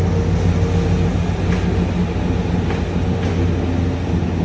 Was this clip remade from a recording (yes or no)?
no